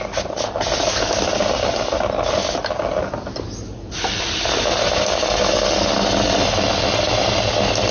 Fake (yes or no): no